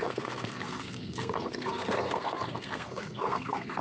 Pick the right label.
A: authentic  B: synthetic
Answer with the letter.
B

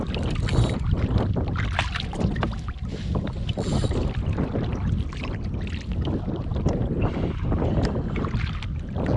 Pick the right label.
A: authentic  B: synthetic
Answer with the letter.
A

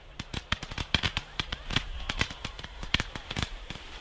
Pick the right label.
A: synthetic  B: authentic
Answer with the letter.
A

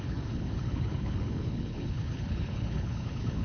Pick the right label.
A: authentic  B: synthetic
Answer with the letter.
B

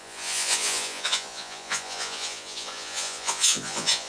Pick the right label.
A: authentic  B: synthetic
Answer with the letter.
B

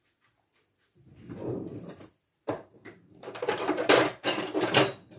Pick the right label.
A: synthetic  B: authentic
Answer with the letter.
A